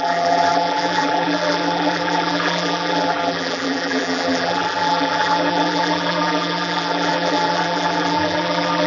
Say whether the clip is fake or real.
fake